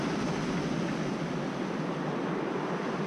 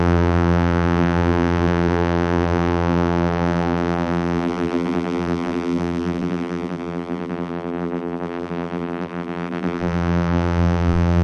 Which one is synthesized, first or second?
second